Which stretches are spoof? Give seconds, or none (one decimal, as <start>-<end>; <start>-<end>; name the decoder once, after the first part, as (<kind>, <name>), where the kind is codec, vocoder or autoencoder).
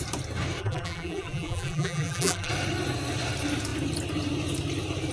0.6-2.5 (vocoder, BigVGAN v2)